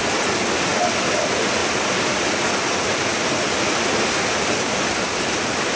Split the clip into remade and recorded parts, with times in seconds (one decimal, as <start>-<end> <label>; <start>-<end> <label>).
0.0-5.8 recorded